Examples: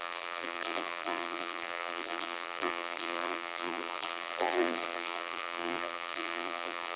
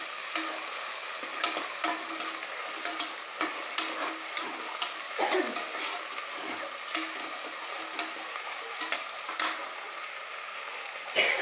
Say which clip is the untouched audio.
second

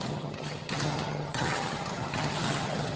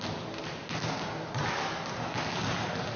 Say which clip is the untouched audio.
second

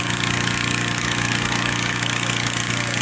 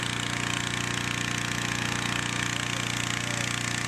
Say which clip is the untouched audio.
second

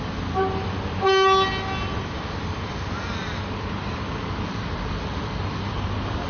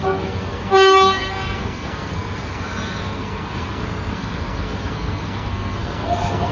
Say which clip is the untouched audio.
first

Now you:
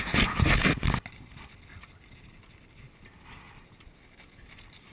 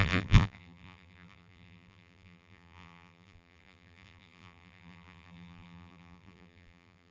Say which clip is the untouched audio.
first